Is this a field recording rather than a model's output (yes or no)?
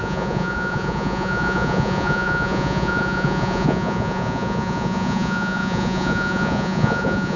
no